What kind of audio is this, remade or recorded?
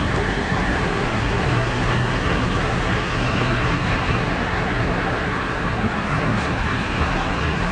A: remade